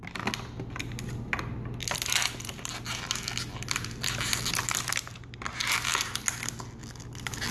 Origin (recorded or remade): recorded